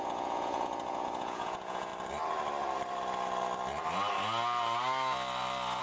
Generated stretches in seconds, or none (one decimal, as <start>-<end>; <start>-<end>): 0.0-1.9